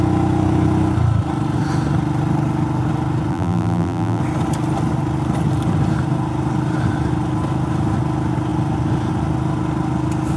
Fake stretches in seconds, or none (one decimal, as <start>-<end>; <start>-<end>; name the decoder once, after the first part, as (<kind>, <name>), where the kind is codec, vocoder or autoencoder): 3.3-4.2 (vocoder, BigVGAN v2)

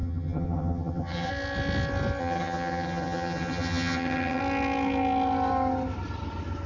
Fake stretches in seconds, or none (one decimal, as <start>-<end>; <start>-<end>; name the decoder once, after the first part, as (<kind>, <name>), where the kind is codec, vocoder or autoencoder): 0.0-1.3 (vocoder, HiFi-GAN); 2.2-4.4

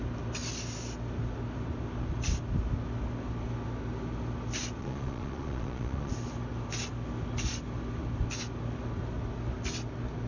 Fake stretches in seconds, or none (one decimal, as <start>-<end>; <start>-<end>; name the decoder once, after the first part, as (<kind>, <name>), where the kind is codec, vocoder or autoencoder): 4.8-6.1 (vocoder, Vocos)